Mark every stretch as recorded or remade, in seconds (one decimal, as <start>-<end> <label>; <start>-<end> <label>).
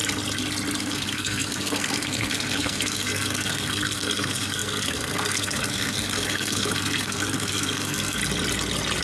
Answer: 0.0-0.8 recorded; 0.8-8.2 remade; 8.2-9.0 recorded